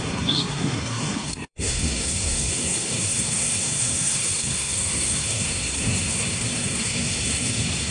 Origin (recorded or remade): remade